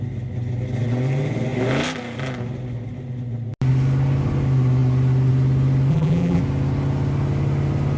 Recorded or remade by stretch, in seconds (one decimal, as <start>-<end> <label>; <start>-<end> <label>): 0.0-5.9 recorded; 5.9-6.4 remade; 6.4-8.0 recorded